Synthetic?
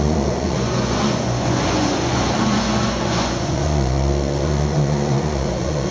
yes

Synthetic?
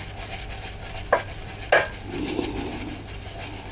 no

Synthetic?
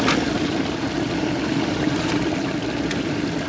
no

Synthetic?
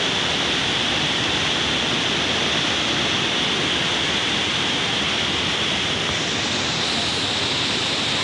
no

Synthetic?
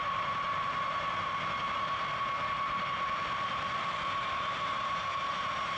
no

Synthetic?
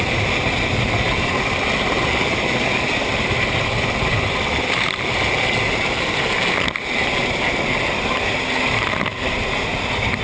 no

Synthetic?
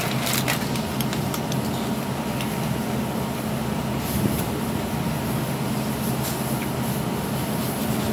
no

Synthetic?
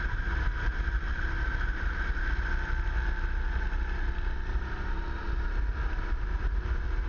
no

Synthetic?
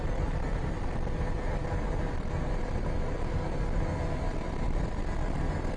yes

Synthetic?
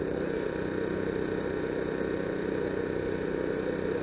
no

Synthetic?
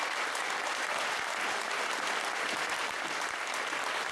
no